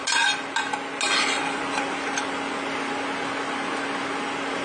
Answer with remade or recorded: recorded